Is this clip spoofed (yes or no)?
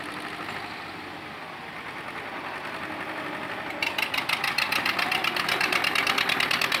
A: no